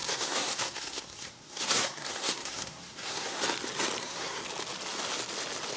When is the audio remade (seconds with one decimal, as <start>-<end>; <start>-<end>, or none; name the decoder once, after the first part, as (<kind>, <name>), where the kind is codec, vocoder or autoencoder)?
0.0-3.4 (codec, SNAC); 4.0-4.4